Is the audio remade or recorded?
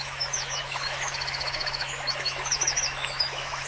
remade